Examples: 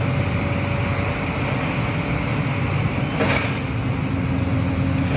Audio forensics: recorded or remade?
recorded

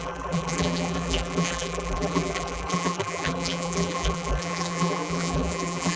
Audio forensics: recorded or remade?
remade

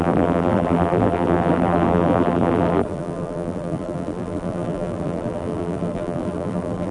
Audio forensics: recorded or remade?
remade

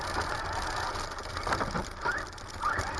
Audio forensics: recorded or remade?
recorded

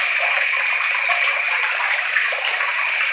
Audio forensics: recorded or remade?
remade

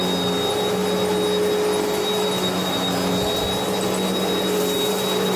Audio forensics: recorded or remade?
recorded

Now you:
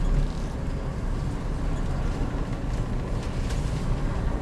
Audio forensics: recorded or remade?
recorded